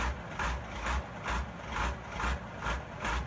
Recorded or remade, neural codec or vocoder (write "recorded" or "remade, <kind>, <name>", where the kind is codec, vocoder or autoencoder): recorded